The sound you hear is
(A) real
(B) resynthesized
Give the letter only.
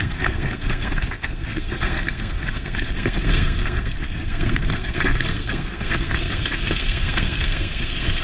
B